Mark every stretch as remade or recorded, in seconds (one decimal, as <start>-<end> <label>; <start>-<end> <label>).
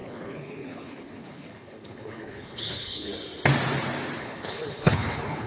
0.0-3.1 remade; 3.1-4.2 recorded; 4.2-5.5 remade